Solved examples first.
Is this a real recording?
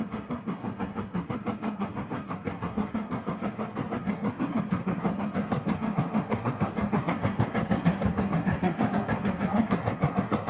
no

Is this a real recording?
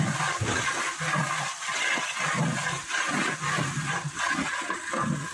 yes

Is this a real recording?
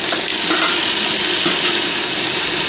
yes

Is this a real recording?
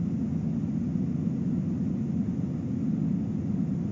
yes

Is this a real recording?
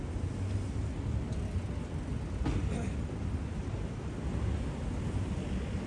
yes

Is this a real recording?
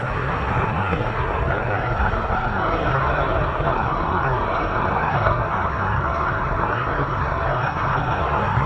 no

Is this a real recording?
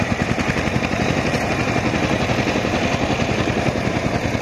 no